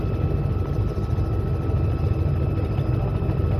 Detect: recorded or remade recorded